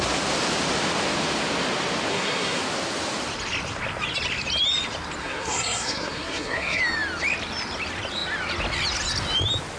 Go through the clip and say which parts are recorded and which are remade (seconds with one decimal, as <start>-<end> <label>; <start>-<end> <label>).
0.0-2.1 recorded; 2.1-2.6 remade; 2.6-5.2 recorded; 5.2-6.8 remade; 6.8-9.8 recorded